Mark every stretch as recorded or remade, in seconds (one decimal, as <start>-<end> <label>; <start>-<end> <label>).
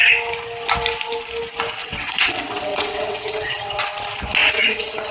0.0-1.8 recorded; 1.8-2.3 remade; 2.3-2.7 recorded; 2.7-3.8 remade; 3.8-4.4 recorded; 4.4-5.1 remade